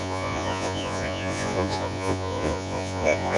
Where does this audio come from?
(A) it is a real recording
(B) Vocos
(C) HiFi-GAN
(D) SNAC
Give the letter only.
B